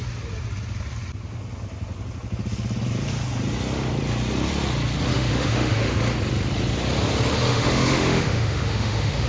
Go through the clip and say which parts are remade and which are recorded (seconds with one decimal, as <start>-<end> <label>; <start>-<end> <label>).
0.0-5.1 recorded; 5.1-6.0 remade; 6.0-7.5 recorded; 7.5-9.3 remade